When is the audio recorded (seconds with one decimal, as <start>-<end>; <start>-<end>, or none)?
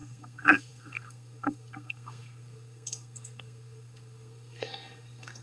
none